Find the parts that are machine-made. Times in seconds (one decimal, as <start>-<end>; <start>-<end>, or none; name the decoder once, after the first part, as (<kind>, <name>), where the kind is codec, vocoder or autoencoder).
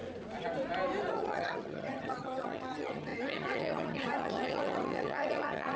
1.1-5.8 (vocoder, HiFi-GAN)